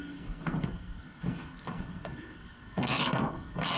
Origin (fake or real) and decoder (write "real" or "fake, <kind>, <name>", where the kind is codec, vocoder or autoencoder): fake, codec, SNAC